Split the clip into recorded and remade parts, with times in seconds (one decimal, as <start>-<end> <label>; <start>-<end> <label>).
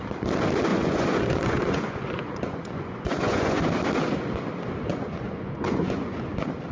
0.0-0.7 recorded; 0.7-3.6 remade; 3.6-4.9 recorded; 4.9-6.3 remade; 6.3-6.7 recorded